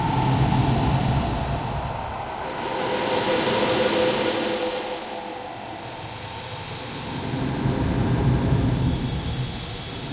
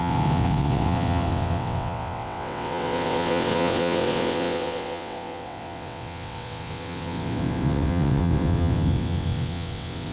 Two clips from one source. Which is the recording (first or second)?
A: first